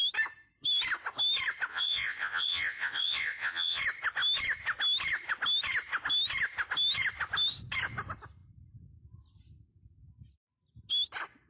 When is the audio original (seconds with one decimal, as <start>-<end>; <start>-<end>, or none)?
0.0-1.7; 3.8-11.5